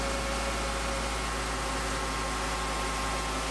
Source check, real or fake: real